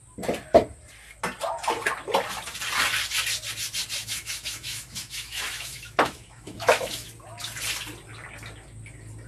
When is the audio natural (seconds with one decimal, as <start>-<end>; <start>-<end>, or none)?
0.0-4.0; 7.1-9.3